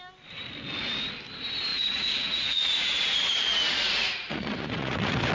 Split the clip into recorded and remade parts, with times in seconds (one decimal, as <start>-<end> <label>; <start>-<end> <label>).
0.0-1.7 recorded; 1.7-5.3 remade